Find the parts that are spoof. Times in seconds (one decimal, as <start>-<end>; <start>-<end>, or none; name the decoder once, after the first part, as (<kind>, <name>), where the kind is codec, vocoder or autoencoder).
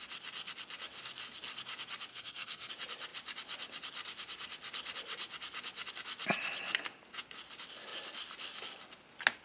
2.1-2.7 (codec, SNAC)